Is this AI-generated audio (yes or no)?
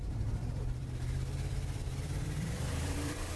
yes